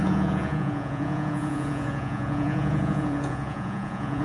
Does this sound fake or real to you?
fake